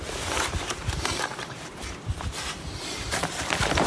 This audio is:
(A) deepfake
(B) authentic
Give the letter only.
A